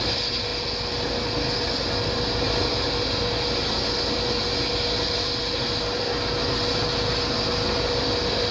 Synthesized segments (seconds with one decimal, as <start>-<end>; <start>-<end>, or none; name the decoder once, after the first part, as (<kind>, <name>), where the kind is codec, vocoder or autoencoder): none